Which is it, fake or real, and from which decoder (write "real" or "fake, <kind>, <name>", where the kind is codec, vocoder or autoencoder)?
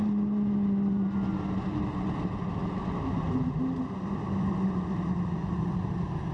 real